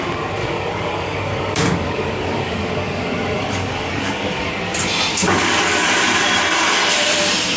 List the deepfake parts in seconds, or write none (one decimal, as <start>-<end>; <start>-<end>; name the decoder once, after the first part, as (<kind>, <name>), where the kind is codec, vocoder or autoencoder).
0.4-4.5 (codec, DAC); 5.1-6.0